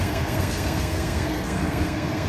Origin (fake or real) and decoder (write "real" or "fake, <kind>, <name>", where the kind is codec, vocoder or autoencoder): fake, codec, SNAC